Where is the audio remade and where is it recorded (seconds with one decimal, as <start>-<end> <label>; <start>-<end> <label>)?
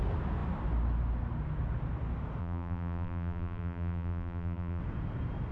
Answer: 0.0-2.4 recorded; 2.4-4.8 remade; 4.8-5.5 recorded